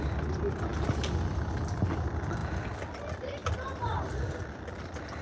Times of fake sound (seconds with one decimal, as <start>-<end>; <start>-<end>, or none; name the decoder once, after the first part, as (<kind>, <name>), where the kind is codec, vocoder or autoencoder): none